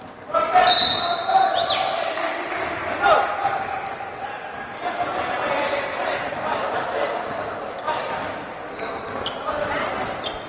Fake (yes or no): no